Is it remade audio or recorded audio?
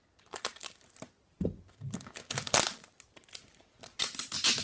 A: recorded